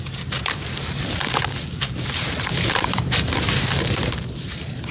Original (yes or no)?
no